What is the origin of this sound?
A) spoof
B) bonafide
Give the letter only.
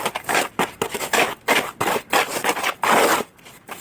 B